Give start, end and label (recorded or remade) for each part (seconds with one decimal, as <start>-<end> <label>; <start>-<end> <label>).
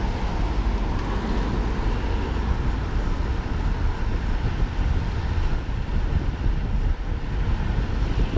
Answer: 0.0-8.4 recorded